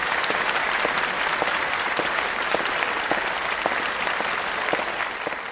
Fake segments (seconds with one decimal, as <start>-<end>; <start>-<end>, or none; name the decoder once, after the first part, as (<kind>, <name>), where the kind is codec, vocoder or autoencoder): 0.0-2.1 (vocoder, BigVGAN v2)